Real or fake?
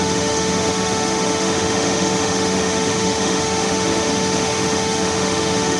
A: fake